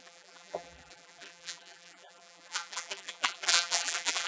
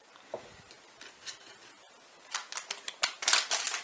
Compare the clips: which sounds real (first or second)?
second